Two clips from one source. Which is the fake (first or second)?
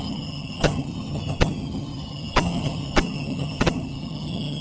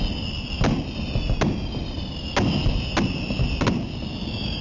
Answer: first